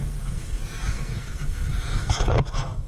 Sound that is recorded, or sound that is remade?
remade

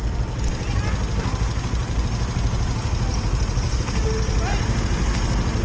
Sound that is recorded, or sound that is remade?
recorded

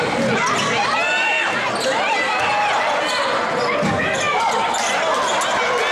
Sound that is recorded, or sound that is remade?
recorded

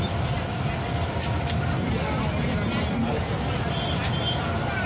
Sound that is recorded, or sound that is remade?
recorded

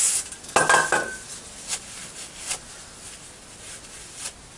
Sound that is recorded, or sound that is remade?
recorded